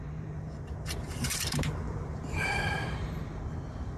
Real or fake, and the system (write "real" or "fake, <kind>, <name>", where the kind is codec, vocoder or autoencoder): fake, vocoder, BigVGAN v2